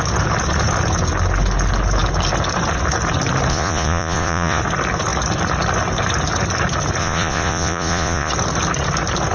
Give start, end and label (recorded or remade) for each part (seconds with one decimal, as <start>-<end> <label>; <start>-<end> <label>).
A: 0.0-3.5 recorded; 3.5-4.6 remade; 4.6-7.0 recorded; 7.0-8.3 remade; 8.3-9.3 recorded